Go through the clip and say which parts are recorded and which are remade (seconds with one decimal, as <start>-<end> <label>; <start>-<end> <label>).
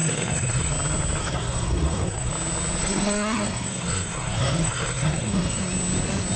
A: 0.0-0.7 remade; 0.7-1.2 recorded; 1.2-2.3 remade; 2.3-2.8 recorded; 2.8-5.6 remade; 5.6-6.4 recorded